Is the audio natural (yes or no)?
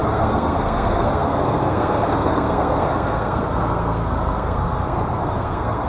no